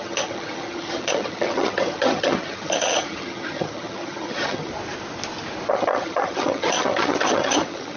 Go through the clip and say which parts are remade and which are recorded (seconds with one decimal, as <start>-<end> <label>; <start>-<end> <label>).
0.0-4.7 remade; 4.7-5.7 recorded; 5.7-8.0 remade